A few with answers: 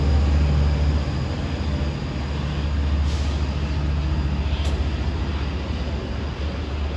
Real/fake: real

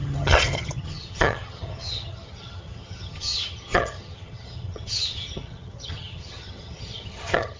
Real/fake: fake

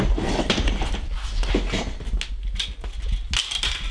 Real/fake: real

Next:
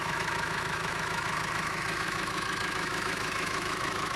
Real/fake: fake